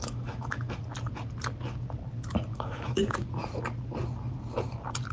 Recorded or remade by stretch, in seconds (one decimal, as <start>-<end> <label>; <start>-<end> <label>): 0.0-0.8 remade; 0.8-2.5 recorded; 2.5-3.3 remade; 3.3-5.1 recorded